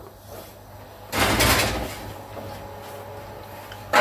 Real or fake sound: real